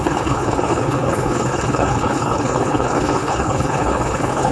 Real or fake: fake